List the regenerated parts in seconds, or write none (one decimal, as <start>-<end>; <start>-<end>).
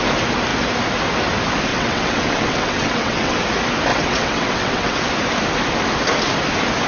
1.7-3.4; 3.9-5.1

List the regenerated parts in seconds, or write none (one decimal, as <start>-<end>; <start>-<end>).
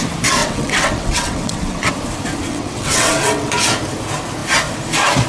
0.4-1.9; 2.5-3.5